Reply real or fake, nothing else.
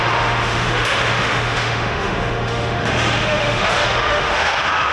fake